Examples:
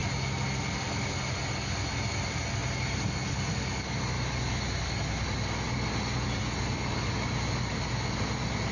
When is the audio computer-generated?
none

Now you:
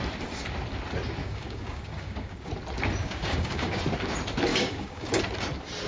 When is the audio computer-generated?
1.2-2.5 (codec, DAC); 3.0-3.8; 4.5-5.1

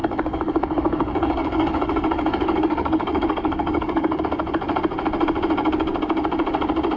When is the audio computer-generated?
0.0-4.2 (codec, DAC)

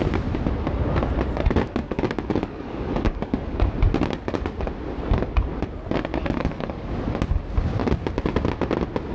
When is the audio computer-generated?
1.8-3.7 (codec, DAC); 6.1-6.9